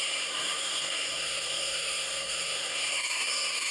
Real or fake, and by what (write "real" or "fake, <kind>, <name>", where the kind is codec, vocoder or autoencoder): fake, codec, SNAC